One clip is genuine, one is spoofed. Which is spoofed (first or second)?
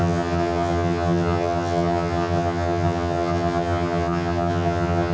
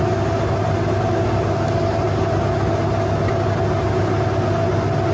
first